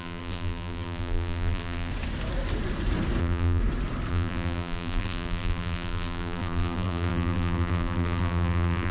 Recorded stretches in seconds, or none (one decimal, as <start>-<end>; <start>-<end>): 1.9-3.2; 3.6-4.1